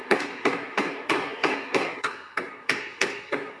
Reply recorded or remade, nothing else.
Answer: remade